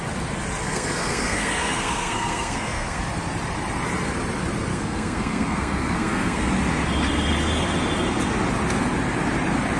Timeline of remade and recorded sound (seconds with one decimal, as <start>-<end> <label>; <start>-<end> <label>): 0.0-0.6 recorded; 0.6-3.0 remade; 3.0-4.7 recorded; 4.7-6.5 remade; 6.5-9.8 recorded